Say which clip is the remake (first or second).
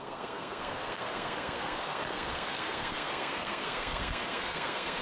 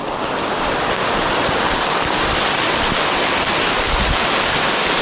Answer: first